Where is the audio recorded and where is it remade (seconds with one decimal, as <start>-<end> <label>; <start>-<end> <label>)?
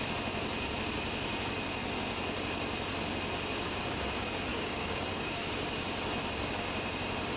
0.0-4.5 recorded; 4.5-5.5 remade; 5.5-7.4 recorded